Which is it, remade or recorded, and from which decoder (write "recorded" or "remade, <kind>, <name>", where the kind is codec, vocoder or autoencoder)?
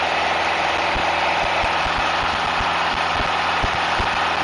recorded